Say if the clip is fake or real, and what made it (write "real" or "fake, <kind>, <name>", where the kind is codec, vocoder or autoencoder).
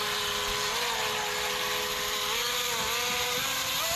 real